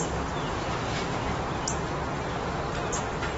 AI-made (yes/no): no